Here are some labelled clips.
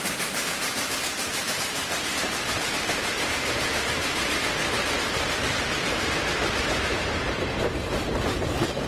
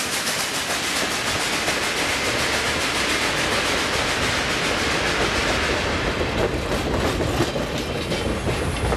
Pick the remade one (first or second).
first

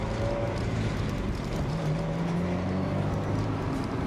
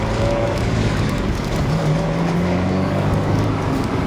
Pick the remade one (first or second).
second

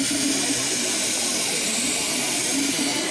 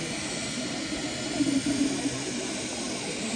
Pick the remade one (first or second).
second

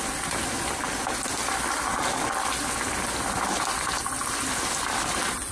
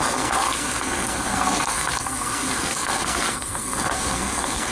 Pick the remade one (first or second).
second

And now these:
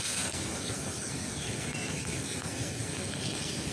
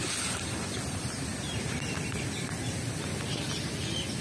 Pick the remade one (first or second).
first